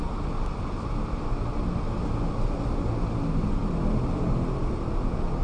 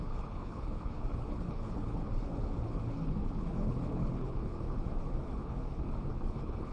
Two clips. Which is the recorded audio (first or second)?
first